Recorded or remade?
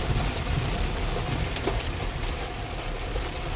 recorded